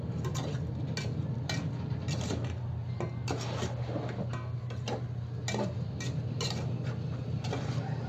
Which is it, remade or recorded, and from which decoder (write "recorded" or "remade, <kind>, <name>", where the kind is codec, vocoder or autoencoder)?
recorded